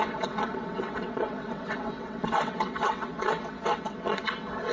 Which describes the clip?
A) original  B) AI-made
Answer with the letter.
B